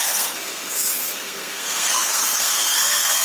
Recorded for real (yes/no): no